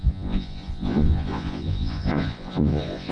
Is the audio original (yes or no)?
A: no